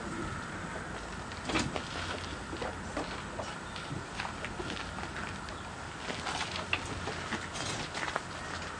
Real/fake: real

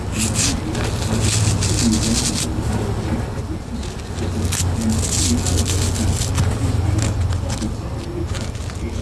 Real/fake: real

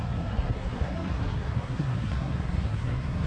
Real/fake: fake